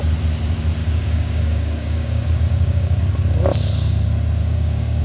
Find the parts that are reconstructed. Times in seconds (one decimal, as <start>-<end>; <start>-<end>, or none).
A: 0.8-3.0; 4.4-5.0